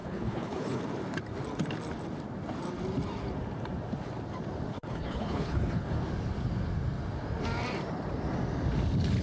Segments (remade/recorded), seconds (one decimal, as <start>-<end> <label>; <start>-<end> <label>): 0.0-0.8 remade; 0.8-4.7 recorded; 4.7-6.0 remade; 6.0-9.2 recorded